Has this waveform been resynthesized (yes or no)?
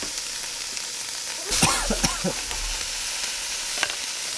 no